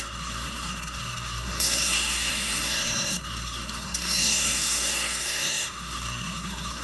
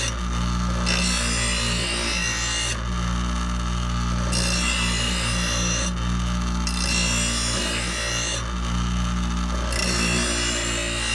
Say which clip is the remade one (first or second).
first